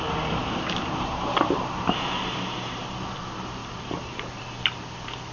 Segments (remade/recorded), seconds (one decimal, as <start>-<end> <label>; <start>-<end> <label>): 0.0-0.4 recorded; 0.4-2.2 remade; 2.2-3.6 recorded; 3.6-4.4 remade; 4.4-5.3 recorded